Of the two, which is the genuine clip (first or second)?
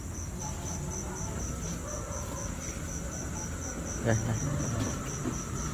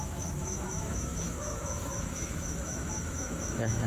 first